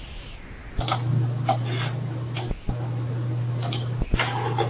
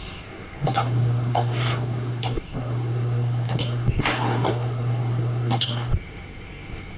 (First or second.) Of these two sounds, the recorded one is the first